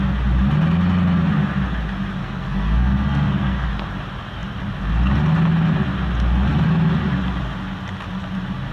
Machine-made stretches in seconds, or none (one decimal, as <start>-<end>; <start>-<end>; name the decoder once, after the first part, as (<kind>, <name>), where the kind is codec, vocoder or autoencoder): 2.2-3.7 (codec, SNAC)